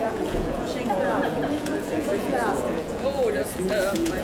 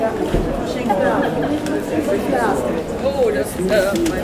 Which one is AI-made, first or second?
first